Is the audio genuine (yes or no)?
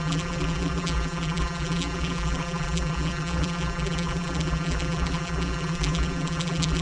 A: no